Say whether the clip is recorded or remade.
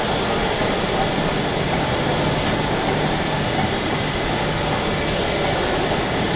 recorded